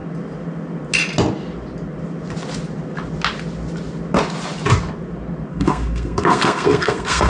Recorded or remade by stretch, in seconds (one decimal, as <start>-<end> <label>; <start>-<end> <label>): 0.0-5.5 recorded; 5.5-7.3 remade